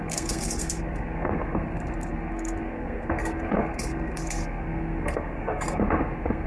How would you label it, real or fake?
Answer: fake